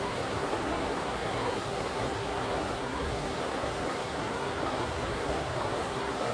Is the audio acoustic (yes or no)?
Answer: no